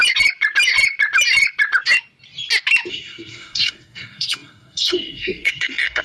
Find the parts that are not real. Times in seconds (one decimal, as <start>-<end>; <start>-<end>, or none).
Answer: 2.9-6.0

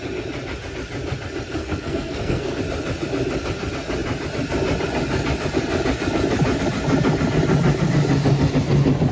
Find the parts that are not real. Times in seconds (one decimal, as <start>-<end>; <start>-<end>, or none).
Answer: 1.6-2.6